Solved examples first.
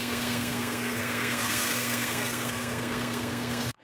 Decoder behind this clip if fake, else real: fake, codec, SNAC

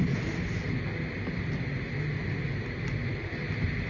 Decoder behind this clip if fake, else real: real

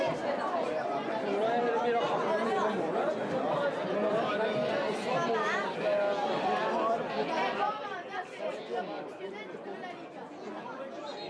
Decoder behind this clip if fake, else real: real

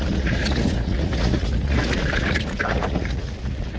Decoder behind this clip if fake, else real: fake, vocoder, Vocos